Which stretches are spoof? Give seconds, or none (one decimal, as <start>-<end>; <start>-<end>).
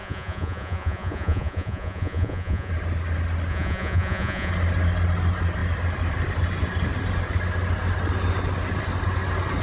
0.0-2.7; 3.5-4.5